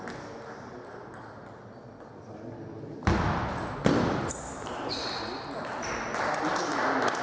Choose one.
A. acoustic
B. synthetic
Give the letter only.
A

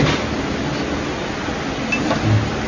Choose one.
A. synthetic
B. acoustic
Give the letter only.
B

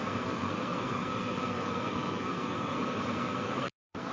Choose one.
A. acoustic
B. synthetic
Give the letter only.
B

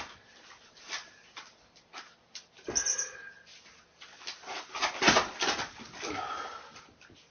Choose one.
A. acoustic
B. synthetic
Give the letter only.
A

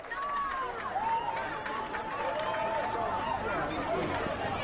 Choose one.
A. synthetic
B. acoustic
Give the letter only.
B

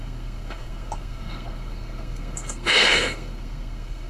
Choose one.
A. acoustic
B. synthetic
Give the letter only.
B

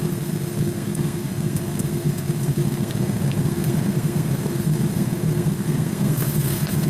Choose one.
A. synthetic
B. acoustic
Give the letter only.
A